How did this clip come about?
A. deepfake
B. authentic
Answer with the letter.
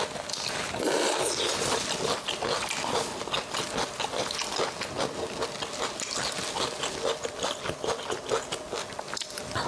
B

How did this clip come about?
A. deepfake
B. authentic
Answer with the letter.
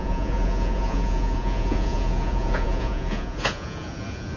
A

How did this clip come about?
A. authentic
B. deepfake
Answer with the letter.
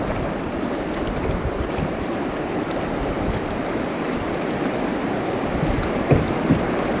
A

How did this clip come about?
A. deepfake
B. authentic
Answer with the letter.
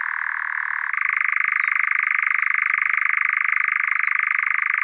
B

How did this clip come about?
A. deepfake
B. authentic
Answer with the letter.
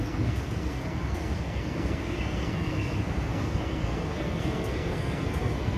A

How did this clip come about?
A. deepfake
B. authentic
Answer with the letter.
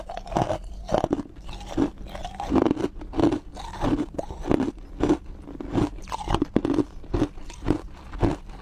B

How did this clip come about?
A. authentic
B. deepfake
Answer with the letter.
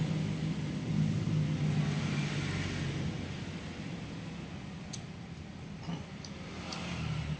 A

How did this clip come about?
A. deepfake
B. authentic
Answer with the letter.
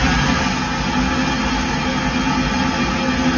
B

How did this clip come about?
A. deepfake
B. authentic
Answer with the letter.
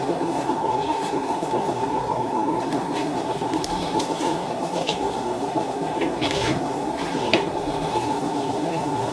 A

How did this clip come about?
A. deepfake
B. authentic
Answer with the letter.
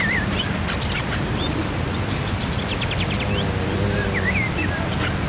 B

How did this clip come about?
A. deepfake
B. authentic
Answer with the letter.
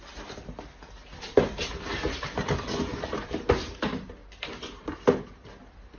B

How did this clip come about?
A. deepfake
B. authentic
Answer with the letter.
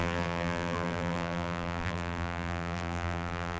A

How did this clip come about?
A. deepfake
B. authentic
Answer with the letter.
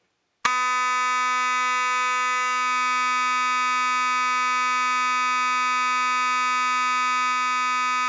B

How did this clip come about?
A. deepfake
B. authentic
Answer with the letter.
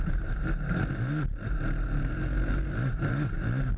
A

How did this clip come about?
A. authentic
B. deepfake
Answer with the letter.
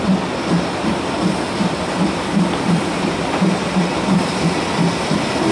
A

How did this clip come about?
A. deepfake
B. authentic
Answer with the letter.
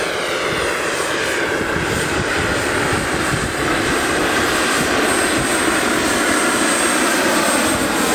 B